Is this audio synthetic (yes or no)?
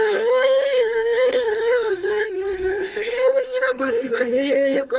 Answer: yes